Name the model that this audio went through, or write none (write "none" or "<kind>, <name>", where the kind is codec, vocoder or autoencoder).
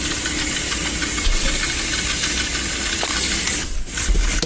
none